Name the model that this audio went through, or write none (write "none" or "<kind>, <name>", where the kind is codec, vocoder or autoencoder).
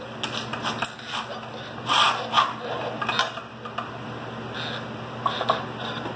none